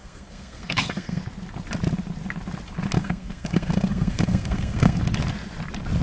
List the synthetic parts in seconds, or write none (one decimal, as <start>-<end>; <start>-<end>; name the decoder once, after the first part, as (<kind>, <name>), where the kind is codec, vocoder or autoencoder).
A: 0.0-1.2 (codec, SNAC); 3.0-5.0